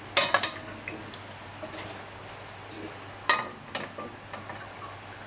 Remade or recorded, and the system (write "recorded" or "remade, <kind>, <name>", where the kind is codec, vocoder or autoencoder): recorded